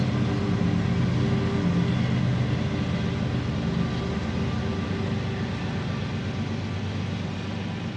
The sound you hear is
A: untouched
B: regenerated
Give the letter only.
A